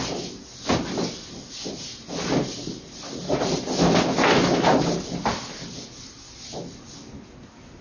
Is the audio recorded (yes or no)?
yes